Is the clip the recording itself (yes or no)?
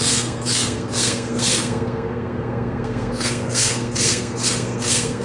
no